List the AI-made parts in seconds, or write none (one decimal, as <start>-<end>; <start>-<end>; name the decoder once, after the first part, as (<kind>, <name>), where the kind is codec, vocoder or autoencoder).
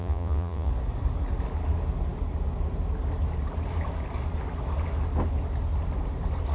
0.0-0.7 (vocoder, Vocos)